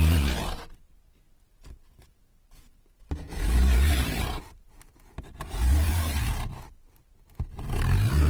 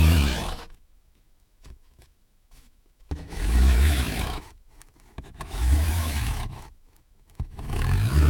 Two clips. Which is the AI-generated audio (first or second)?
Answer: second